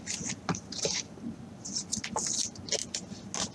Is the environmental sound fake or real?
real